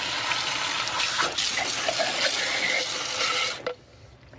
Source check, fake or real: real